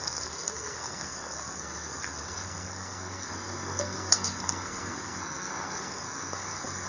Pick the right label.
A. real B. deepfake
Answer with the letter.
B